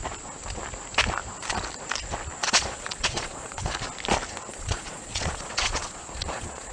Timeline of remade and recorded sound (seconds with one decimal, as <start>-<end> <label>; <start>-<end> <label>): 0.0-2.4 recorded; 2.4-3.7 remade; 3.7-4.5 recorded; 4.5-6.7 remade